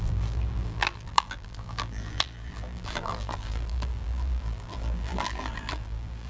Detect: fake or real fake